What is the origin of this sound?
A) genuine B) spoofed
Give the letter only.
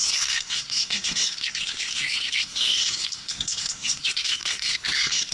B